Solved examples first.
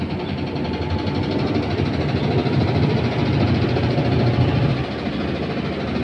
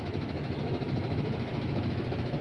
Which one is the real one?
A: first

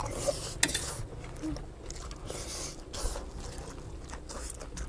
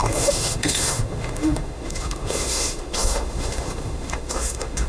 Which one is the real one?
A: first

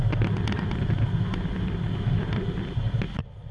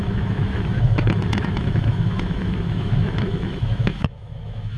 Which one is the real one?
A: first